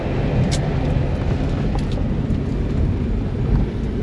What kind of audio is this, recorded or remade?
recorded